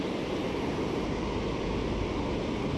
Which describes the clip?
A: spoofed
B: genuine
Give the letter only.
B